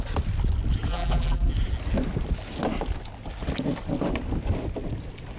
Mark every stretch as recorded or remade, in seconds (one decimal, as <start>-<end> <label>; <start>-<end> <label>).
0.0-0.9 recorded; 0.9-1.5 remade; 1.5-5.4 recorded